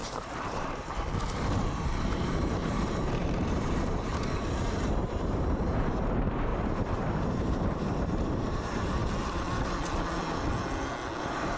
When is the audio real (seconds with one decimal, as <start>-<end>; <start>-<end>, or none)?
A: 9.0-11.2